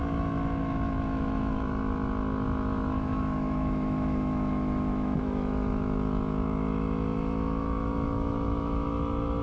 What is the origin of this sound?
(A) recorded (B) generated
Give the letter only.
B